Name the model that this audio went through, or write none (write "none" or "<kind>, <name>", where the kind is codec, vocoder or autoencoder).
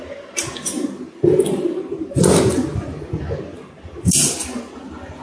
none